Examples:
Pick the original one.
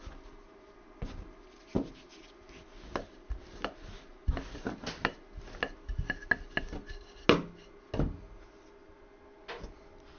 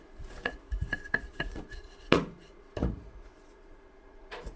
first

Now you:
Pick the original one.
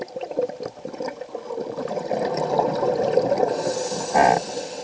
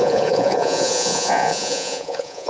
first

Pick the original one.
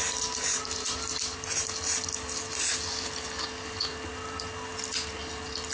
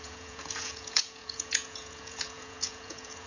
first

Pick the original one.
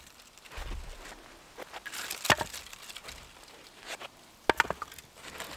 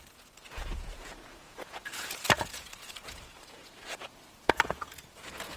first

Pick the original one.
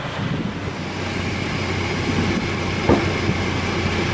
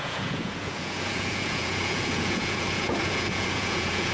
first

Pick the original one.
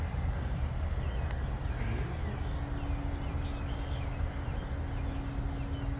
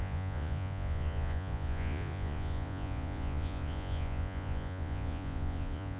first